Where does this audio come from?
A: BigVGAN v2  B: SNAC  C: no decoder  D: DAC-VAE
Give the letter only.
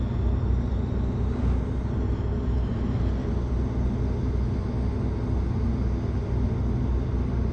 C